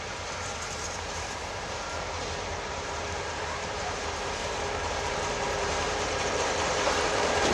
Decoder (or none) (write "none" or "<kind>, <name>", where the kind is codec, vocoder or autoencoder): vocoder, BigVGAN v2